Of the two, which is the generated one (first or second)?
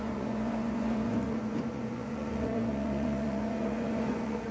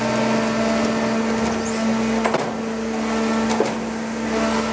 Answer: first